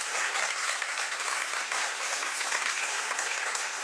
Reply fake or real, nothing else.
fake